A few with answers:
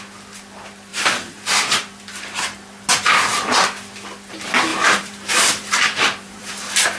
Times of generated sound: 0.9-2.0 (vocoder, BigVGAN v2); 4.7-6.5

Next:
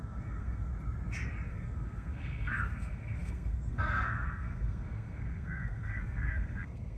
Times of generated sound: 0.0-0.7 (codec, SNAC); 1.5-7.0

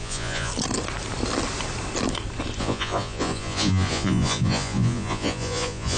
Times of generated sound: 0.0-0.5 (vocoder, Vocos); 2.6-6.0